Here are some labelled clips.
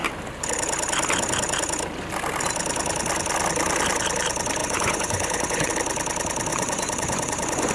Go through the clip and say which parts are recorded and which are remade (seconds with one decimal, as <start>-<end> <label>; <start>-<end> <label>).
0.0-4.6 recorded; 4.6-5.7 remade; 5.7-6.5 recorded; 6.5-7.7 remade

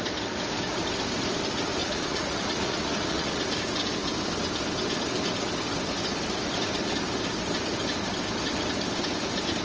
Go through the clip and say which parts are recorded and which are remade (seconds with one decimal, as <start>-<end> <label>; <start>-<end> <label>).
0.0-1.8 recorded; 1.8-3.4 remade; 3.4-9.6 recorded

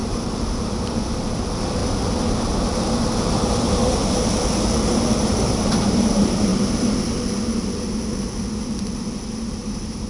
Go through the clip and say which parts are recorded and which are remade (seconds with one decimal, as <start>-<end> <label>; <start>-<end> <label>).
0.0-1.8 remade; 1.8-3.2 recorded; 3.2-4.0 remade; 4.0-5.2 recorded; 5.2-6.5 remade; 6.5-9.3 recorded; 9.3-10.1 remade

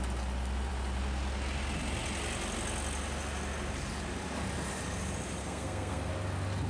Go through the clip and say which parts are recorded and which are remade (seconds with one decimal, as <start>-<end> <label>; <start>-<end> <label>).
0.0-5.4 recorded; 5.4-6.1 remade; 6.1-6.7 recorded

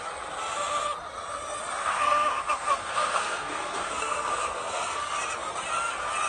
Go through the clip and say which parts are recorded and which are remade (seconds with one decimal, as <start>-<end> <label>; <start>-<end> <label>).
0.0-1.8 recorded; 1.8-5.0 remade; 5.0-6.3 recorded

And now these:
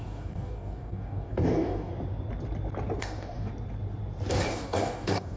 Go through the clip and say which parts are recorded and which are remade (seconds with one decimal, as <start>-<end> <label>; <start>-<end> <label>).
0.0-1.9 remade; 1.9-3.0 recorded; 3.0-3.5 remade; 3.5-4.5 recorded; 4.5-5.4 remade

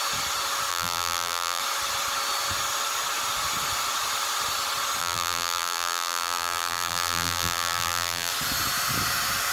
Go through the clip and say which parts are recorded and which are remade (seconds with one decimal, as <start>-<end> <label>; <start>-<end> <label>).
0.0-0.7 recorded; 0.7-1.6 remade; 1.6-5.0 recorded; 5.0-8.3 remade; 8.3-9.5 recorded

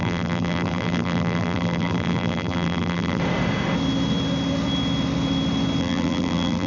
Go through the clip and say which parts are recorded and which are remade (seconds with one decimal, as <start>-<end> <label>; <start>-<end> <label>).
0.0-3.2 remade; 3.2-5.8 recorded; 5.8-6.7 remade